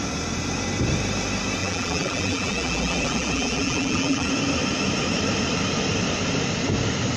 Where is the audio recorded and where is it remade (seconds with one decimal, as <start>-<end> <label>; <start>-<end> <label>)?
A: 0.0-1.6 recorded; 1.6-4.3 remade; 4.3-7.2 recorded